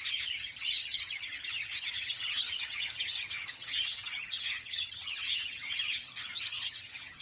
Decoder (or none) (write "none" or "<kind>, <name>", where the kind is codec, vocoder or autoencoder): vocoder, HiFi-GAN